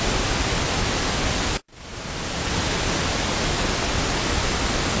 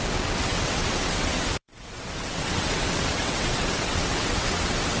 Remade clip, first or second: second